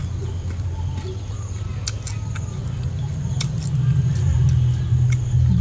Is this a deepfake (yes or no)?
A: no